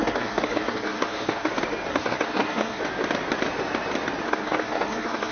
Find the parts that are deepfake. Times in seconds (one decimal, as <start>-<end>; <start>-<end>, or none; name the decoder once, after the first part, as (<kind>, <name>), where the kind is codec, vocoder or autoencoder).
0.0-1.5 (codec, SNAC); 1.9-2.8; 4.2-5.3